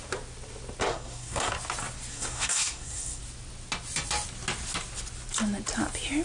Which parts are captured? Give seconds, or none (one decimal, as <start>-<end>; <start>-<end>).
0.0-0.9; 1.5-2.1; 3.2-6.2